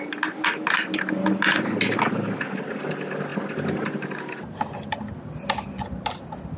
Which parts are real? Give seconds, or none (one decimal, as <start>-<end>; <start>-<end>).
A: 0.0-6.6